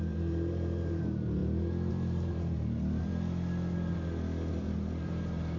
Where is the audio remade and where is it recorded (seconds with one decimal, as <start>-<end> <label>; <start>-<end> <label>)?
0.0-1.4 remade; 1.4-1.9 recorded; 1.9-3.1 remade; 3.1-4.5 recorded; 4.5-5.6 remade